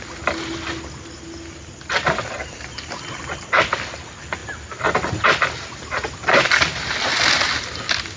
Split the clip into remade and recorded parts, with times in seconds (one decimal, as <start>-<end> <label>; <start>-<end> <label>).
0.0-8.2 recorded

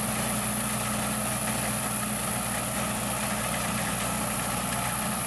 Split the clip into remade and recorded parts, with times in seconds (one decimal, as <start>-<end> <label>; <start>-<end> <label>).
0.0-5.3 recorded

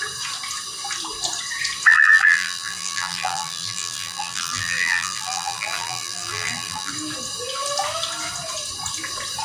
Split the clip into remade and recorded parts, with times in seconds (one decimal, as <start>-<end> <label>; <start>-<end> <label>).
0.0-1.9 recorded; 1.9-6.9 remade; 6.9-9.4 recorded

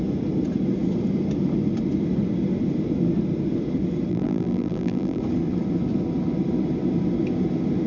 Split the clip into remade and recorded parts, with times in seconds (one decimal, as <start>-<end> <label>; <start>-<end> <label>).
0.0-4.1 recorded; 4.1-5.2 remade; 5.2-7.9 recorded

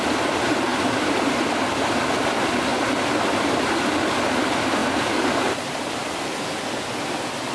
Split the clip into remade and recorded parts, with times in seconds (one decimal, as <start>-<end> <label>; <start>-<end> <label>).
0.0-0.7 recorded; 0.7-2.1 remade; 2.1-4.8 recorded; 4.8-6.3 remade; 6.3-7.5 recorded

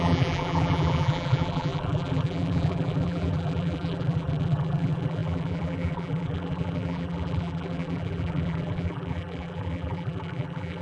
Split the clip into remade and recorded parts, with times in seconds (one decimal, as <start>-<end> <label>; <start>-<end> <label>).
0.0-10.8 remade

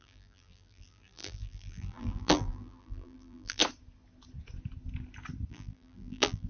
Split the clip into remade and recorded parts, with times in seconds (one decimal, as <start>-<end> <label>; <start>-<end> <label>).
0.0-3.6 remade; 3.6-5.5 recorded; 5.5-6.5 remade

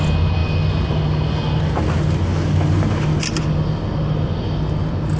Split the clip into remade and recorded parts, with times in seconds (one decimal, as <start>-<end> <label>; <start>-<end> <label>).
0.0-5.2 recorded